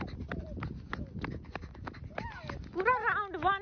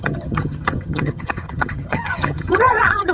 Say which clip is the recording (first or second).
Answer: first